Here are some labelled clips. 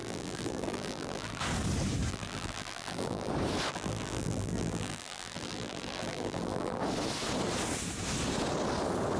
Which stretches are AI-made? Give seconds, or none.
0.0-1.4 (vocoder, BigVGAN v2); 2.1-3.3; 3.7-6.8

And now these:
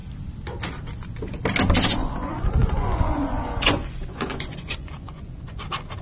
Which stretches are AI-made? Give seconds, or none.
2.0-5.6 (vocoder, Vocos)

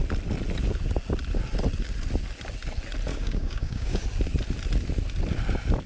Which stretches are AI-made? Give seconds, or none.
3.1-4.0 (codec, DAC)

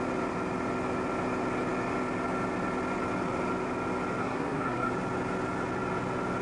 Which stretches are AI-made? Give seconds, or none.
4.2-4.9 (codec, SNAC)

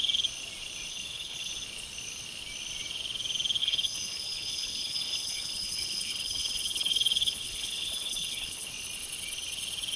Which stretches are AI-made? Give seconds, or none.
0.9-1.5 (codec, HILCodec); 3.6-8.7

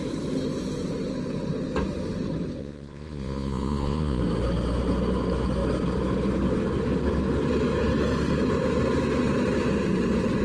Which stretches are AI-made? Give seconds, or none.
2.6-4.2 (vocoder, Vocos)